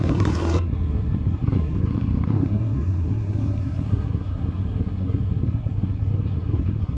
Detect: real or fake fake